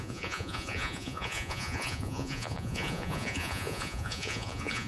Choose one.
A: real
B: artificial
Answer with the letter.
B